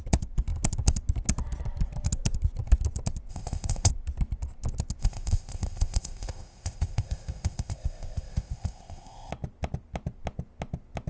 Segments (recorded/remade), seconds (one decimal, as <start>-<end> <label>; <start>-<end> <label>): 0.0-3.3 recorded; 3.3-3.9 remade; 3.9-5.0 recorded; 5.0-9.3 remade; 9.3-11.1 recorded